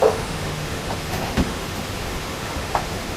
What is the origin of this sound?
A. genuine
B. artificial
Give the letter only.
B